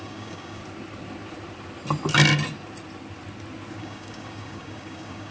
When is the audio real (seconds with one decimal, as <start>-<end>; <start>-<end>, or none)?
0.6-3.8